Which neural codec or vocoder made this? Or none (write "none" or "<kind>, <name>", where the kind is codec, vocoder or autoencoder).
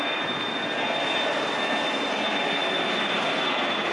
none